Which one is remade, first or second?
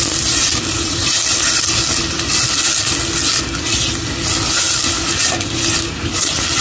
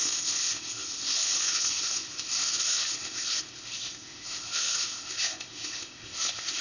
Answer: second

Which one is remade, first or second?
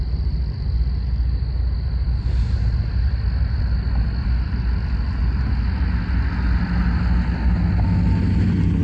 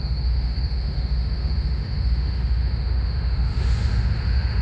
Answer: second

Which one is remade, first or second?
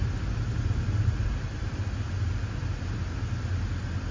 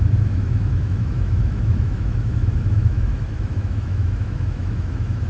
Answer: second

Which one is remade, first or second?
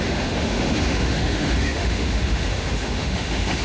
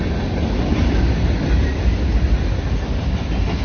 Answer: first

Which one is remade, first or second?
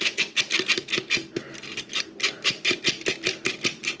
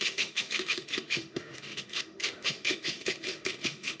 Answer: second